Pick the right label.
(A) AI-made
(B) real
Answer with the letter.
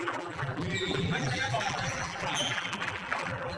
A